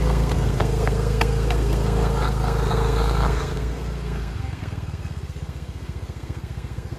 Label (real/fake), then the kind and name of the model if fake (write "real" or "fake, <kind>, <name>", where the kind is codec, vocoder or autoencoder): fake, codec, SNAC